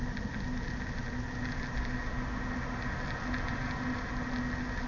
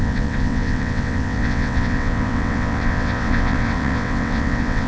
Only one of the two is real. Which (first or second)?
first